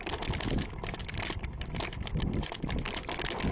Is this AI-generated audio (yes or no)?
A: no